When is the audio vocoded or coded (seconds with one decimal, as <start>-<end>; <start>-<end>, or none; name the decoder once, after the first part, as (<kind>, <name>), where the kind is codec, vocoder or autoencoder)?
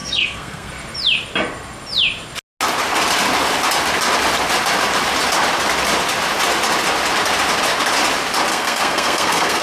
0.0-0.7 (codec, SNAC); 8.5-9.6